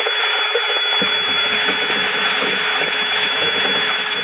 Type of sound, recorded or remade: remade